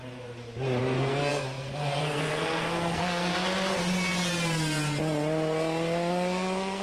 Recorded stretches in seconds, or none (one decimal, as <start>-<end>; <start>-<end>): 0.0-0.8; 3.3-6.1